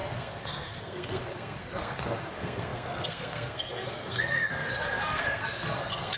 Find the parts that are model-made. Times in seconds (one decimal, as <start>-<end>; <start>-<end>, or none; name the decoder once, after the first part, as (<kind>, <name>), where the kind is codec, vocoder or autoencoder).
0.0-6.2 (codec, SNAC)